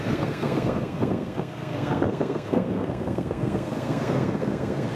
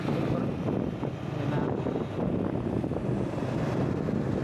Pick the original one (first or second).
second